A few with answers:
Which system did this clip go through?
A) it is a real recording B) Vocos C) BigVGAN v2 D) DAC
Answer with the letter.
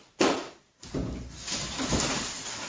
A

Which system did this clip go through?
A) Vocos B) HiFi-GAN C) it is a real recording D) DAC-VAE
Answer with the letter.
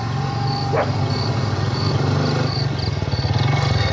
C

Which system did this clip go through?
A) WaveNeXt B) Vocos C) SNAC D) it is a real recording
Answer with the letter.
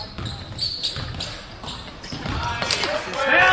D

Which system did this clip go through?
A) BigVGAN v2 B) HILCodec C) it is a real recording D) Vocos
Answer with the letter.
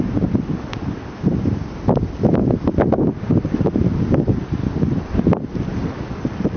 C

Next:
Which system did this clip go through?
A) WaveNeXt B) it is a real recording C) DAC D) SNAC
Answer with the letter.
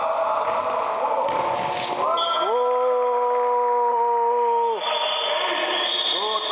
B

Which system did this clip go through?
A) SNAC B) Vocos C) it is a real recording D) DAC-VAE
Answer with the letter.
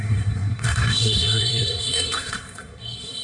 A